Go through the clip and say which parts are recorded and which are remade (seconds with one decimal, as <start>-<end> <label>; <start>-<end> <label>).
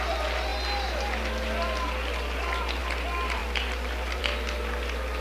0.0-5.2 recorded